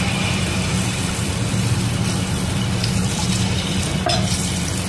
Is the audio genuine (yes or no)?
no